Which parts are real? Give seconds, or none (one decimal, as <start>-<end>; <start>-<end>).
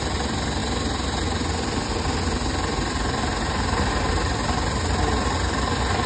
0.0-6.1